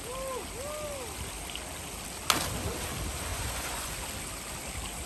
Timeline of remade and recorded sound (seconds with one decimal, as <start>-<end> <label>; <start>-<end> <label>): 0.0-3.3 recorded; 3.3-3.9 remade; 3.9-5.1 recorded